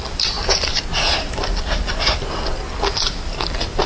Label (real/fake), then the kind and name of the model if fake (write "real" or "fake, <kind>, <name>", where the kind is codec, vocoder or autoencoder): real